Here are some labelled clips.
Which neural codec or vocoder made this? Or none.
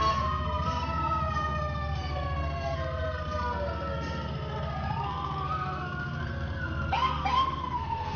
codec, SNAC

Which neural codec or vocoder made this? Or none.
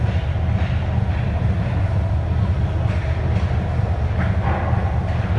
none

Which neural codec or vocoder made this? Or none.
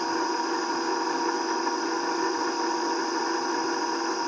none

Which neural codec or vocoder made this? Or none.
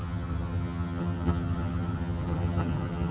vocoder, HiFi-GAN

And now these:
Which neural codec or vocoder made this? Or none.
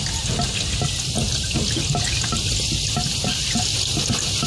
none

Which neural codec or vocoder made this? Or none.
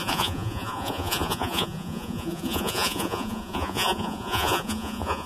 vocoder, Vocos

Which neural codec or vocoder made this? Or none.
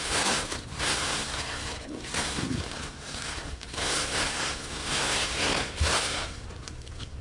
codec, SNAC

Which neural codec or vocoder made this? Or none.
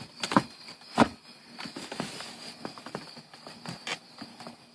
none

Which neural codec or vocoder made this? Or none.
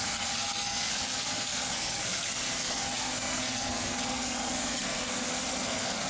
codec, SNAC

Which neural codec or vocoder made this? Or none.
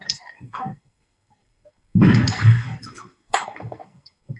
codec, SNAC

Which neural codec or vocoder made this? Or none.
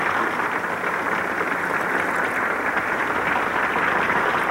none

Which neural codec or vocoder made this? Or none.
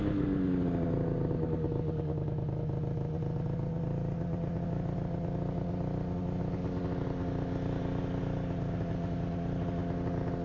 none